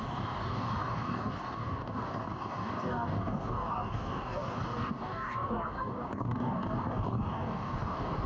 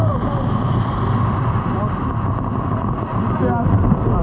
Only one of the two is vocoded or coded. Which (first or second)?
first